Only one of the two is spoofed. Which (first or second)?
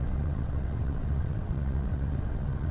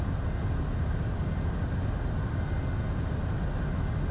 first